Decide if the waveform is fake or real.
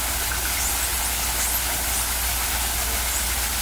real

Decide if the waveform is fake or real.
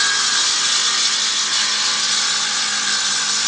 real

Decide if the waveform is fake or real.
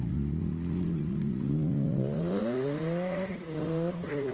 fake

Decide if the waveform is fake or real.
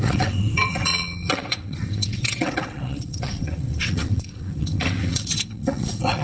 fake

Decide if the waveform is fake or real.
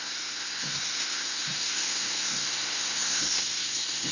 fake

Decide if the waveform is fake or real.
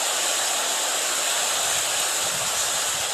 real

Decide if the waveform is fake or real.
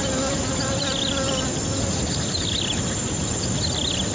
real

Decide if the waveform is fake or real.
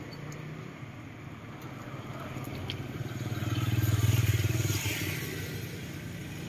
real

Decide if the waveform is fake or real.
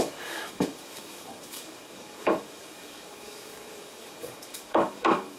fake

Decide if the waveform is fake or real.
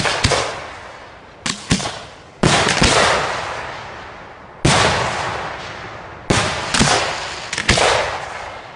real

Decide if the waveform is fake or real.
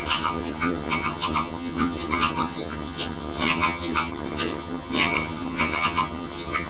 fake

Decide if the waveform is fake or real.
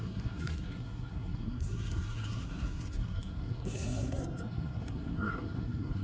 fake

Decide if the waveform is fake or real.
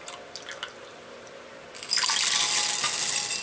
real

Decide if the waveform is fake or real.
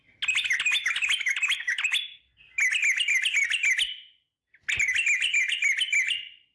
real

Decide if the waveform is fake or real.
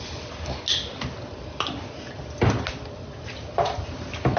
real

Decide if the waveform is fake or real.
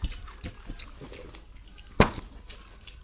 real